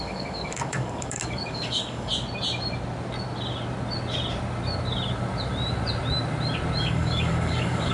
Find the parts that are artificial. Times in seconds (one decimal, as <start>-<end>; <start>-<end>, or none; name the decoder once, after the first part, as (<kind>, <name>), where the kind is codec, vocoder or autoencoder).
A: 0.0-2.1 (codec, DAC); 6.8-7.9